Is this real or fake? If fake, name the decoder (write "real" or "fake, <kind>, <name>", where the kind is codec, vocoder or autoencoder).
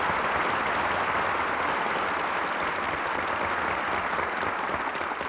real